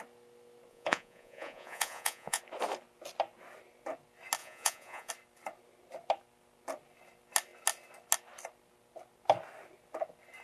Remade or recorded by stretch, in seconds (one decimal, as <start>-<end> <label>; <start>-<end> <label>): 0.0-0.7 recorded; 0.7-2.4 remade; 2.4-4.4 recorded; 4.4-5.1 remade; 5.1-10.4 recorded